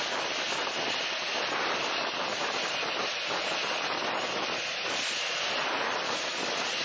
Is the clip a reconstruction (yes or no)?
no